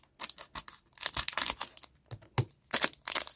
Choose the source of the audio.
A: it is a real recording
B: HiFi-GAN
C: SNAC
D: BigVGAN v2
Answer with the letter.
A